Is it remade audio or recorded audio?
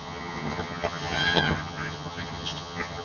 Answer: remade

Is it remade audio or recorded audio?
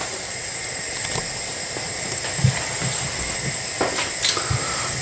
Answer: recorded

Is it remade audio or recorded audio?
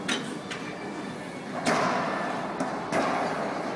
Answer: recorded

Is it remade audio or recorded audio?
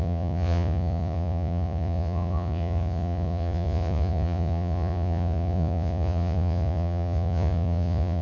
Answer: remade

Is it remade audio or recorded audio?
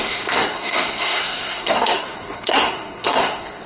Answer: remade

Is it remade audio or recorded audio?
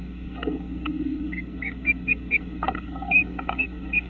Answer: remade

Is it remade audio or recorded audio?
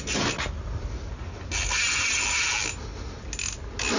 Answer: recorded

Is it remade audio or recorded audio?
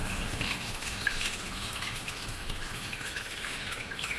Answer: remade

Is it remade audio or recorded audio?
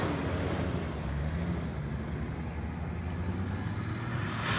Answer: recorded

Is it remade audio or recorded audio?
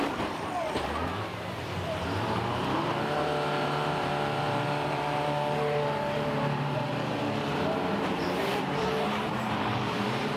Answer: remade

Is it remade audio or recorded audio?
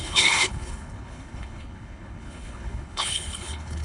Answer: remade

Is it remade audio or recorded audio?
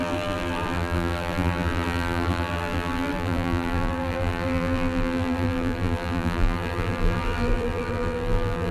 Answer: remade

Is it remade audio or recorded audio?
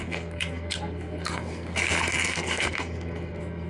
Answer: remade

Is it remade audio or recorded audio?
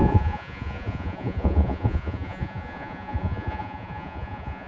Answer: remade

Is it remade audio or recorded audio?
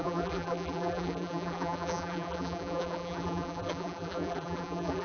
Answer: remade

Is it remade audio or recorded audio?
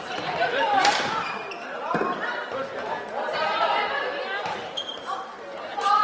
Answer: remade